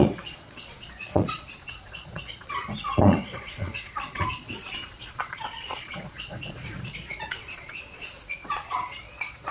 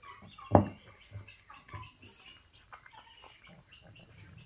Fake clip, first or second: first